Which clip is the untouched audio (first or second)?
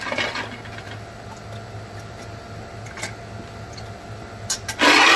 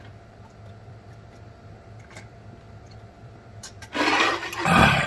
first